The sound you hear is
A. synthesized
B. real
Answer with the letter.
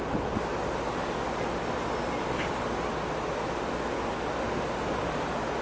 B